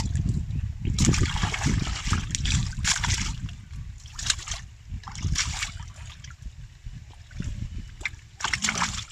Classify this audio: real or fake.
real